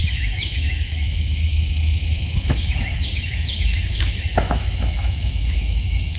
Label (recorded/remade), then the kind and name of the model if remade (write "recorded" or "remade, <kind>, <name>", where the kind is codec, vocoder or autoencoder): remade, autoencoder, DAC-VAE